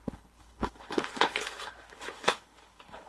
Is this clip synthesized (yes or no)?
yes